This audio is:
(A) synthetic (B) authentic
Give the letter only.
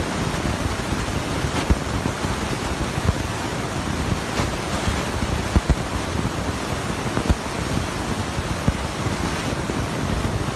B